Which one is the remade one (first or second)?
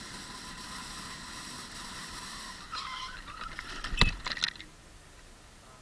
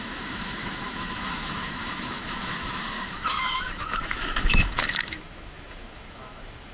second